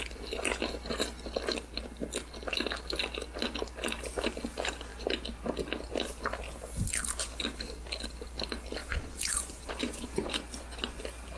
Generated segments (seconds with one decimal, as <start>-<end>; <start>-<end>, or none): 8.8-11.0